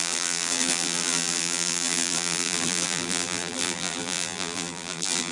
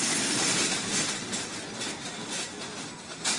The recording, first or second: second